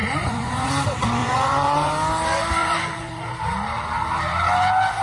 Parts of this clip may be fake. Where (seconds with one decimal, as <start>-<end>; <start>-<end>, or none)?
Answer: 0.0-0.7; 1.2-1.9; 2.6-3.3